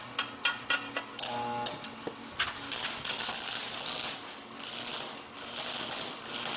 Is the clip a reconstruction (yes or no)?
no